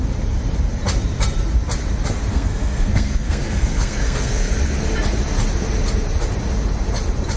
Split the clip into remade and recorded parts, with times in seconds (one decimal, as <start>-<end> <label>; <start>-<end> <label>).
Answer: 0.0-2.3 recorded; 2.3-4.5 remade; 4.5-7.4 recorded